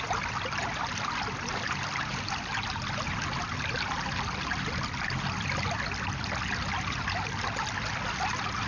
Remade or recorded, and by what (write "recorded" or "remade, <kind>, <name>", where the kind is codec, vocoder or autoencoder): recorded